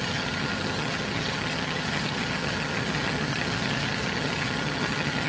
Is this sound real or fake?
fake